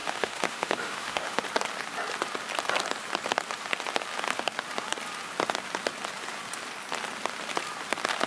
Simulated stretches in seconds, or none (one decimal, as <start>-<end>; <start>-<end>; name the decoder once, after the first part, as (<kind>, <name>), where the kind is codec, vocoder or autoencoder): 0.0-1.4 (autoencoder, DAC-VAE)